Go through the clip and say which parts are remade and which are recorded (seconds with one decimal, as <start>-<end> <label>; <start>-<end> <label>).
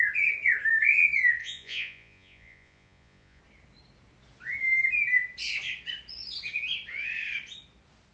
0.0-1.4 recorded; 1.4-3.4 remade; 3.4-8.1 recorded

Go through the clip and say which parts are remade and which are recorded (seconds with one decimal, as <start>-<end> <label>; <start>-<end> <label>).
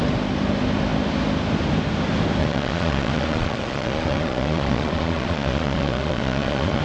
0.0-2.4 recorded; 2.4-6.8 remade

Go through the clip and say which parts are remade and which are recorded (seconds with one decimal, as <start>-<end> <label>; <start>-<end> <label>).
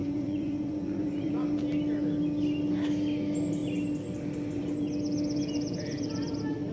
0.0-1.3 remade; 1.3-6.7 recorded